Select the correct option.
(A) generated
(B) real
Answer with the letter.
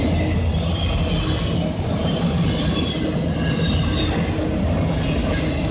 B